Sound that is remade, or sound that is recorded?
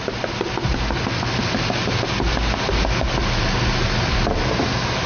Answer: recorded